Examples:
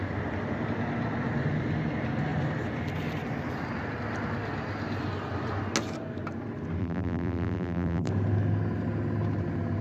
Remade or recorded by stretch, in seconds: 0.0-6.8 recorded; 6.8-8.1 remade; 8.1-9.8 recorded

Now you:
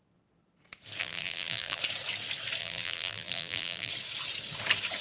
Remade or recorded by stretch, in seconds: 0.0-1.0 recorded; 1.0-1.8 remade; 1.8-2.6 recorded; 2.6-3.9 remade; 3.9-5.0 recorded

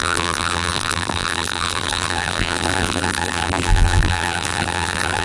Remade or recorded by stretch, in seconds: 0.0-5.2 remade

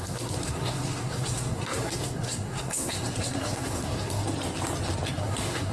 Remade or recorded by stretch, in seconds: 0.0-4.2 remade; 4.2-5.1 recorded; 5.1-5.7 remade

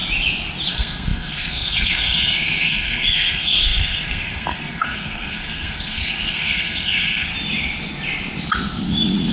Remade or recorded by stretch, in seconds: 0.0-0.7 recorded; 0.7-7.3 remade; 7.3-9.3 recorded

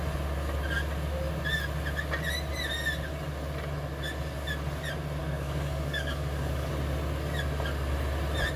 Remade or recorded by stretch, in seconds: 0.0-5.2 recorded; 5.2-6.7 remade; 6.7-8.6 recorded